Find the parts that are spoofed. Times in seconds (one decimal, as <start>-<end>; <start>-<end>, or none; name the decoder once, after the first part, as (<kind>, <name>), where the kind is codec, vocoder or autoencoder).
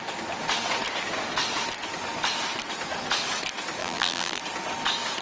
3.8-4.4 (vocoder, BigVGAN v2)